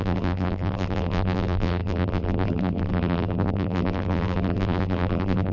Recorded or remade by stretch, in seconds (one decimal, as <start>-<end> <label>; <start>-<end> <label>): 0.0-5.5 remade